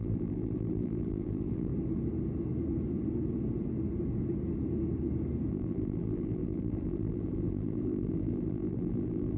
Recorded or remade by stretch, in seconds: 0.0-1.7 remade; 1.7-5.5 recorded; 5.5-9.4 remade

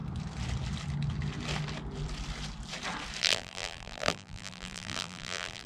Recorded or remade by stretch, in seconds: 0.0-3.2 recorded; 3.2-5.7 remade